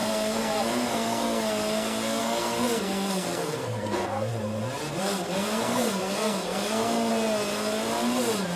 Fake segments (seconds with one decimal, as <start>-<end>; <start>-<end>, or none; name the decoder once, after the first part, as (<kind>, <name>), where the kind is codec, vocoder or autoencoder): 0.0-4.3 (codec, SNAC); 5.0-7.1